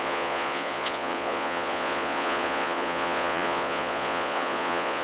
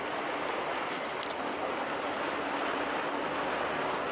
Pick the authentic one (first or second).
second